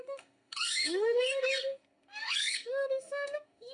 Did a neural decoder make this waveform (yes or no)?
yes